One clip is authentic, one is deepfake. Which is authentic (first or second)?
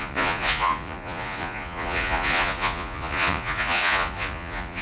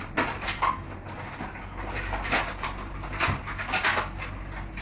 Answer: second